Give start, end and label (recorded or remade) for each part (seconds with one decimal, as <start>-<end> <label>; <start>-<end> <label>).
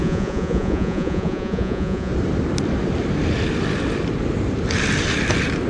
0.0-2.1 remade; 2.1-5.7 recorded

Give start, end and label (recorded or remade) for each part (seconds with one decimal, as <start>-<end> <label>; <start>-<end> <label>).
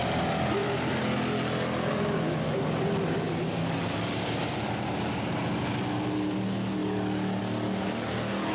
0.0-8.5 recorded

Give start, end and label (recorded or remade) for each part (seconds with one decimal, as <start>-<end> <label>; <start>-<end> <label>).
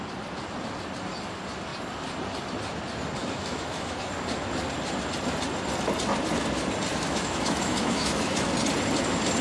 0.0-3.2 recorded; 3.2-4.1 remade; 4.1-6.9 recorded; 6.9-8.5 remade; 8.5-9.4 recorded